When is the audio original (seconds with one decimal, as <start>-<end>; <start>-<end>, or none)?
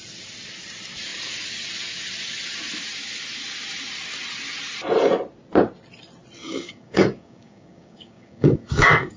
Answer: 0.0-6.4